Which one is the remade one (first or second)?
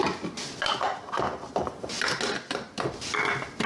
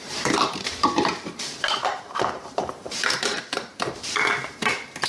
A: second